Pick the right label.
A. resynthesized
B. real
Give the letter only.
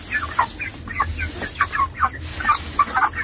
B